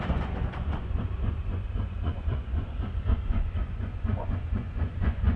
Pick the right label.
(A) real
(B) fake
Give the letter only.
B